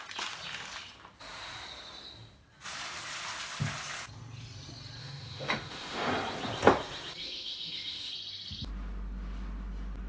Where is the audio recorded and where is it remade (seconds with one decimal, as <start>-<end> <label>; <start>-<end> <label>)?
0.0-5.0 recorded; 5.0-6.1 remade; 6.1-7.2 recorded; 7.2-8.1 remade; 8.1-10.1 recorded